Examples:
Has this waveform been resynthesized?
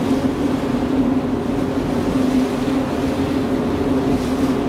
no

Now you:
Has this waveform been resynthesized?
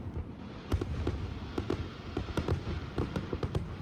no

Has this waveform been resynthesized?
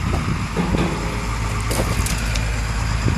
no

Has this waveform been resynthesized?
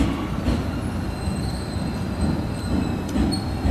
no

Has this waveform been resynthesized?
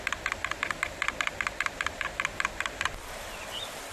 no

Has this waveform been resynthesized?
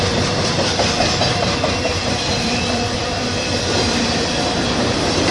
yes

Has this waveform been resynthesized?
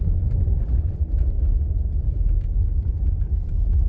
yes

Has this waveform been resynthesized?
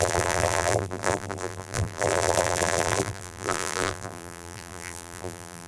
yes